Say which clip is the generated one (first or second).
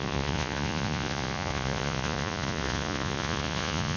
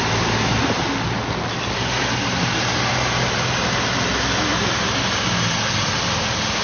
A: first